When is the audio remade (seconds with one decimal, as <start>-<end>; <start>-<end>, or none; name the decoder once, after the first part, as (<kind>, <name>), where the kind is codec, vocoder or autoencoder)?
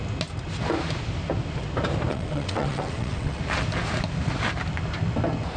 2.1-3.4 (vocoder, WaveNeXt)